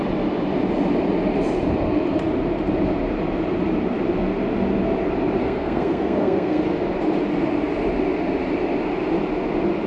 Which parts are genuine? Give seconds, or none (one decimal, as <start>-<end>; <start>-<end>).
0.0-5.4; 6.6-9.9